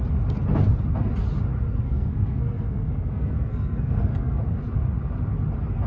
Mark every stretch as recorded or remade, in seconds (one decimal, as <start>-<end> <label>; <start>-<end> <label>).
0.0-1.8 recorded; 1.8-4.4 remade; 4.4-5.9 recorded